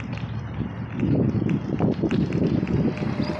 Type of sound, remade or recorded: remade